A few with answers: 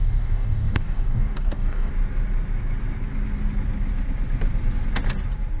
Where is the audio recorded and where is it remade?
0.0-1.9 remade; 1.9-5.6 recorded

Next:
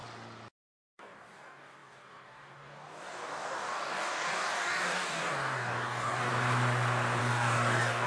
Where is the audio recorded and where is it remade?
0.0-0.6 recorded; 0.6-6.3 remade; 6.3-7.2 recorded; 7.2-8.1 remade